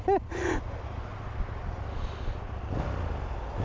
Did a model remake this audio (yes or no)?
no